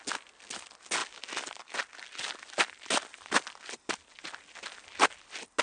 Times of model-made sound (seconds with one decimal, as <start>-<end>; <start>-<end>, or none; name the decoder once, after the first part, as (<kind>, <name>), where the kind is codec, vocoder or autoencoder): none